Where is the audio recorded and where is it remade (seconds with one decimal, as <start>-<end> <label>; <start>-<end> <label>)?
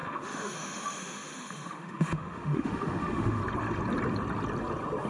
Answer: 0.0-3.4 remade; 3.4-5.1 recorded